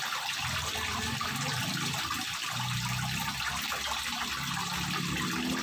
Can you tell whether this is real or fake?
real